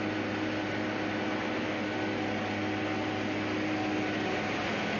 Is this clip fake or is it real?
real